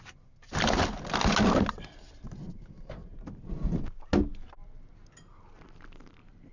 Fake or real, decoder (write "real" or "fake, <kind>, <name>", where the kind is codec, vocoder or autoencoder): real